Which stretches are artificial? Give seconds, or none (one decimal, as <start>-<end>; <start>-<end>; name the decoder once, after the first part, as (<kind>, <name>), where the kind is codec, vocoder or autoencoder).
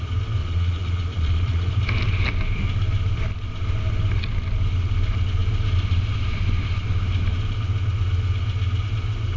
0.4-1.7 (vocoder, Vocos)